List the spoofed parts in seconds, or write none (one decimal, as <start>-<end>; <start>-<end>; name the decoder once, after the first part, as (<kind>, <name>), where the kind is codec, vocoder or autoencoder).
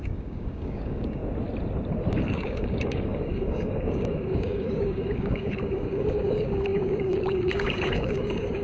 0.0-1.2 (codec, DAC); 2.1-8.6